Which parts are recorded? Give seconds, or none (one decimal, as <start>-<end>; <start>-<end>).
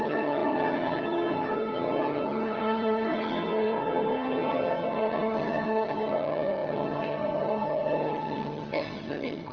none